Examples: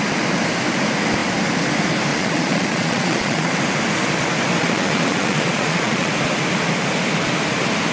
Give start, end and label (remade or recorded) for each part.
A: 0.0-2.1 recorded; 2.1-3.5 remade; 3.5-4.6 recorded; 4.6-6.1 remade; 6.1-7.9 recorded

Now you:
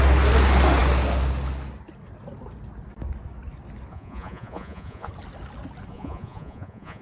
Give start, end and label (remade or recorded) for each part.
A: 0.0-3.9 recorded; 3.9-5.1 remade; 5.1-5.9 recorded; 5.9-7.0 remade

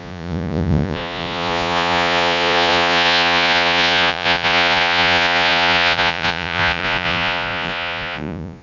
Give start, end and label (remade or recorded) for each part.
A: 0.0-8.6 remade

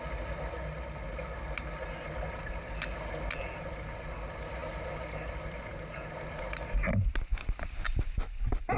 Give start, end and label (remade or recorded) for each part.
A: 0.0-8.8 recorded

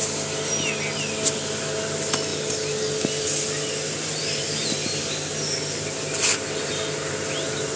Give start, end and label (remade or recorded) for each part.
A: 0.0-7.8 recorded